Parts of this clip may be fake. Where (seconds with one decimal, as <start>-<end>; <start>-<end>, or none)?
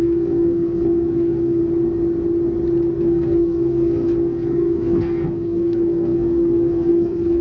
0.0-1.6; 3.0-7.4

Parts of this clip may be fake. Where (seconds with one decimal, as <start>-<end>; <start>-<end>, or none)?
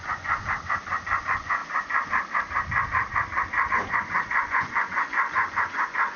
0.0-0.4; 1.2-1.6; 3.7-6.2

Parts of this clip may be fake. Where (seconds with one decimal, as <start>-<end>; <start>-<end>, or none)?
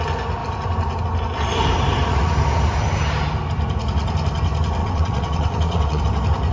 4.8-6.0